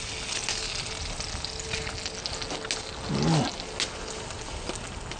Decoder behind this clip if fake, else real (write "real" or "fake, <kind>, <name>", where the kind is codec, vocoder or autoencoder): real